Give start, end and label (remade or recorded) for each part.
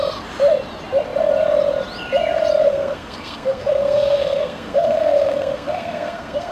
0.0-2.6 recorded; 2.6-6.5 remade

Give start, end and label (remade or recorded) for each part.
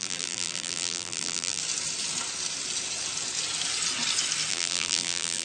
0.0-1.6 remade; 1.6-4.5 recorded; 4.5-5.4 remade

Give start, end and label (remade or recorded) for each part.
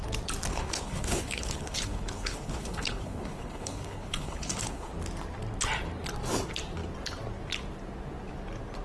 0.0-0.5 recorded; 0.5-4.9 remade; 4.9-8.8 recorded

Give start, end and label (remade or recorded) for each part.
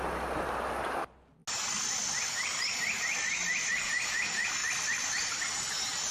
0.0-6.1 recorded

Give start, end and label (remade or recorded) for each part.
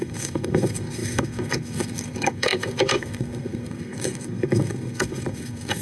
0.0-5.8 remade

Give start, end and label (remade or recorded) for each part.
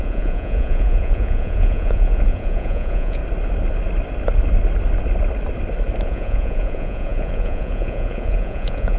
0.0-3.2 remade; 3.2-6.0 recorded; 6.0-9.0 remade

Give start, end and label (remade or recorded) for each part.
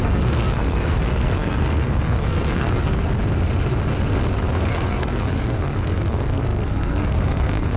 0.0-3.0 remade; 3.0-4.7 recorded; 4.7-7.8 remade